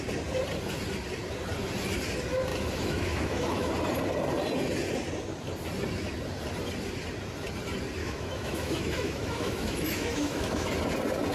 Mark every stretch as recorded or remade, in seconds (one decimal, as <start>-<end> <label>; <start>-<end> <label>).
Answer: 0.0-2.5 recorded; 2.5-3.7 remade; 3.7-8.0 recorded; 8.0-10.7 remade; 10.7-11.3 recorded